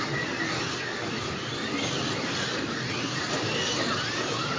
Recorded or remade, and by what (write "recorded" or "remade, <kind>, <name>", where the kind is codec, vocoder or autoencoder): recorded